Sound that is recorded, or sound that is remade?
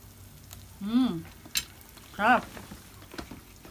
recorded